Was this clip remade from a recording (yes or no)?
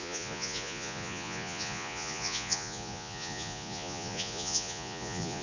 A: yes